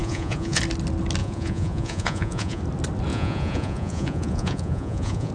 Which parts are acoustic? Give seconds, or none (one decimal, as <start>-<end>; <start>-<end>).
0.6-1.2; 2.6-3.1